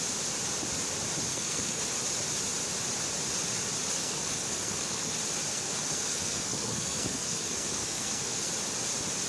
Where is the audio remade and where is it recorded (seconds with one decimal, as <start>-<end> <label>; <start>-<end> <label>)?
0.0-1.3 recorded; 1.3-1.8 remade; 1.8-4.0 recorded; 4.0-5.1 remade; 5.1-5.5 recorded; 5.5-8.5 remade; 8.5-9.3 recorded